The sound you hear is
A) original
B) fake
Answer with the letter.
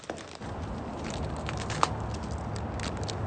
A